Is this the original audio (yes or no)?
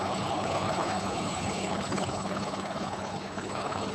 no